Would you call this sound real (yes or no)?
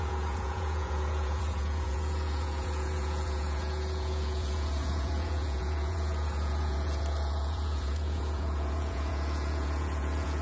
no